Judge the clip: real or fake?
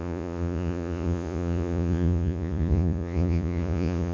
fake